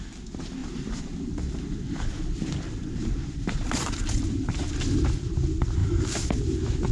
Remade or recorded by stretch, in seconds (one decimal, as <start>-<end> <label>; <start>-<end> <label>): 0.0-0.6 recorded; 0.6-4.7 remade; 4.7-5.8 recorded; 5.8-6.4 remade; 6.4-6.9 recorded